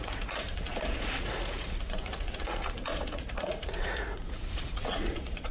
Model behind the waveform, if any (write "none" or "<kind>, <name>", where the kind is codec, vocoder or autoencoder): vocoder, Vocos